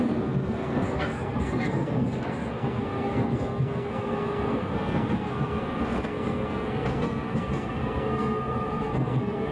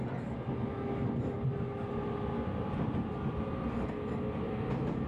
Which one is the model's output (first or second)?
first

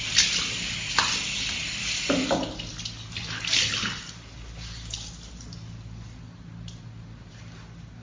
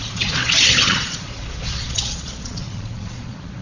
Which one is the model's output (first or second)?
second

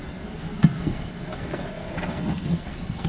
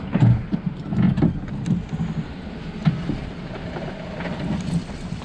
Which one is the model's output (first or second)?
first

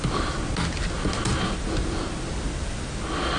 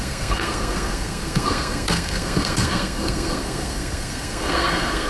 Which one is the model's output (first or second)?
second